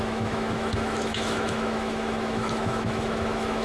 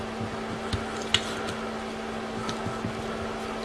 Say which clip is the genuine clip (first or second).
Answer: second